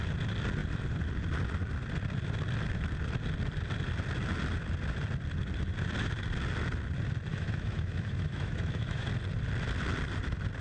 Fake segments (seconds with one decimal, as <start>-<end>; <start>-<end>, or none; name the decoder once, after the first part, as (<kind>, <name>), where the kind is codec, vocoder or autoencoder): 7.3-9.1 (autoencoder, DAC-VAE)